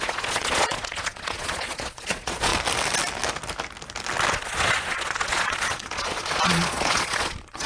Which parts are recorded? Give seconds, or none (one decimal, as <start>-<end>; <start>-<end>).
2.5-4.3